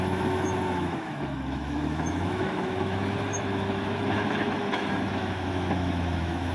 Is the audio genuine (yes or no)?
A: no